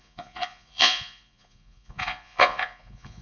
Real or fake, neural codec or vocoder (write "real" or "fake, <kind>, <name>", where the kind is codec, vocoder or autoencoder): fake, vocoder, Vocos